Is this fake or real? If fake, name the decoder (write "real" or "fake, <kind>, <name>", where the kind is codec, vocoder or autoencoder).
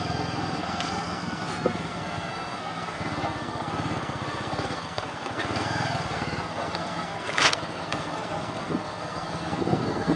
fake, codec, SNAC